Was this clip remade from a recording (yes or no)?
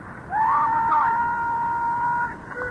no